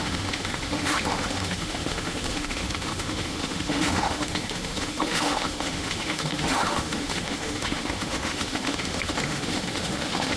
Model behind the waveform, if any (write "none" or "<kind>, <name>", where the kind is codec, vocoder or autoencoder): autoencoder, DAC-VAE